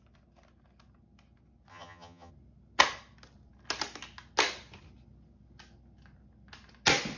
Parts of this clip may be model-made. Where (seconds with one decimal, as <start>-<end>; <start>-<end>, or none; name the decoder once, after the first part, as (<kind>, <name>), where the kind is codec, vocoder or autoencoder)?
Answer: 1.7-2.3 (vocoder, HiFi-GAN)